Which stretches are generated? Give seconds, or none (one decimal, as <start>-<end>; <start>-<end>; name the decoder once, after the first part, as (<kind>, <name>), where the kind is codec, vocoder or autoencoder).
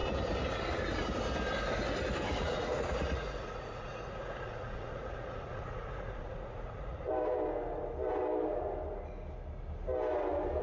2.4-7.1 (vocoder, Vocos)